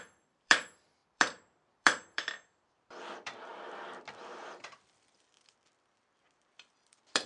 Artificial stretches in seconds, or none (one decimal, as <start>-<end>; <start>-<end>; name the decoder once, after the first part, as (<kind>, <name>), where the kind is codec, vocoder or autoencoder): 0.0-7.3 (vocoder, BigVGAN v2)